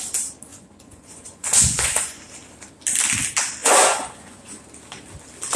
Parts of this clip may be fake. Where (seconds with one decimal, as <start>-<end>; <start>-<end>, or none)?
0.5-2.2; 3.6-4.6